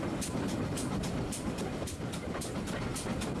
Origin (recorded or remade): recorded